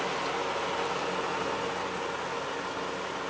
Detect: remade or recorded recorded